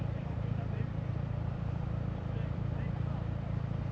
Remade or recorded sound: remade